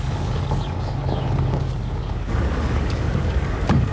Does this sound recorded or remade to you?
remade